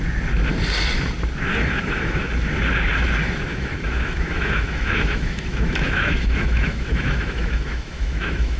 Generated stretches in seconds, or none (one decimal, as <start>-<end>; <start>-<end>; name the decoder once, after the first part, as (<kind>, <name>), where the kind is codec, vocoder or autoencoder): 1.5-2.3 (autoencoder, DAC-VAE); 3.5-8.6